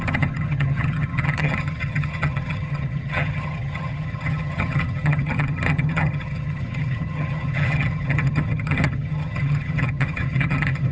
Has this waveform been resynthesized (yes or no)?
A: yes